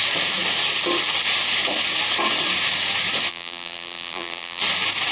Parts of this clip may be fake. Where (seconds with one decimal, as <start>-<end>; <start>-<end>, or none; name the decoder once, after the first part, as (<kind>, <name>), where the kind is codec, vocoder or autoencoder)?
3.3-4.6 (vocoder, BigVGAN v2)